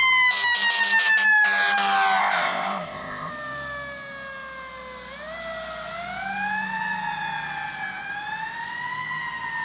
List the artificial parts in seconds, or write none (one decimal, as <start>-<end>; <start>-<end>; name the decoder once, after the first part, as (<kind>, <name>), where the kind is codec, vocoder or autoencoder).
2.2-3.3 (codec, ZipCodec)